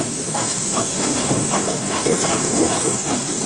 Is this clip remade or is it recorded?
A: remade